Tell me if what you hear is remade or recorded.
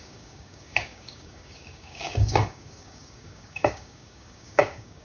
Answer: remade